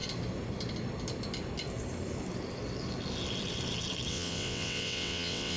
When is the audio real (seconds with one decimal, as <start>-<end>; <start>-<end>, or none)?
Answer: 0.0-4.1

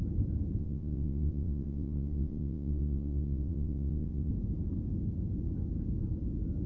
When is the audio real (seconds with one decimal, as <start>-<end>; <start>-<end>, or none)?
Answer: 0.0-0.6; 4.3-6.7